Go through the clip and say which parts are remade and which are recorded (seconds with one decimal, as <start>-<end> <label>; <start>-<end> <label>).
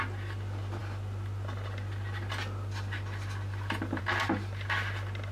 0.0-5.3 recorded